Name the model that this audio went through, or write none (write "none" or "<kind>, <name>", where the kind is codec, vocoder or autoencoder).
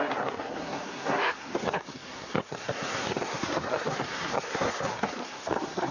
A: codec, SNAC